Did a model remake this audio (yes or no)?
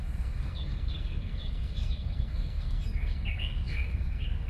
yes